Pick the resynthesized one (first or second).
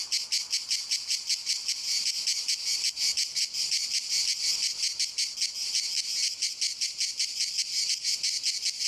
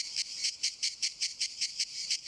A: second